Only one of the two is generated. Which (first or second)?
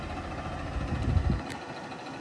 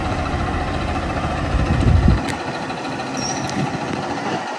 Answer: second